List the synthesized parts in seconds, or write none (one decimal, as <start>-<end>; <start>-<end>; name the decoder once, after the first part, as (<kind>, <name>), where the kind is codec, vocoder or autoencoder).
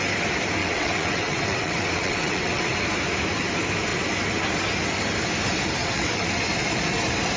0.6-2.7 (vocoder, WaveNeXt); 5.8-6.3